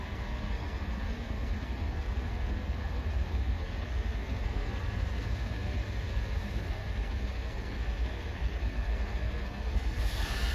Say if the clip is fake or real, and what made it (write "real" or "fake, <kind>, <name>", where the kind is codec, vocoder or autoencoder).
fake, codec, SNAC